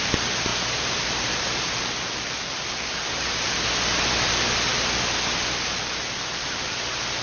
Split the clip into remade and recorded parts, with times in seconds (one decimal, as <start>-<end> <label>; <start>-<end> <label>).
0.0-7.2 recorded